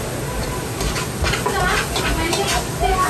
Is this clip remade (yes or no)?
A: no